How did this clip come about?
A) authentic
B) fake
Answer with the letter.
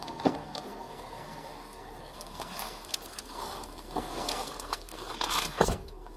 B